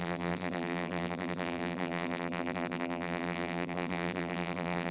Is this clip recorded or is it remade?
remade